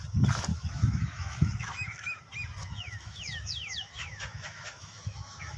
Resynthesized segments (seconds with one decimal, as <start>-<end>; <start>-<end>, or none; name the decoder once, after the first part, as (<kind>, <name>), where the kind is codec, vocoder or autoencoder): 0.5-2.2 (autoencoder, DAC-VAE); 2.6-5.6